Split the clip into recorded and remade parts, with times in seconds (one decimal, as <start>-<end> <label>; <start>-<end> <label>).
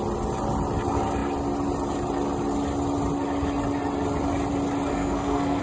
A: 0.0-4.9 recorded; 4.9-5.6 remade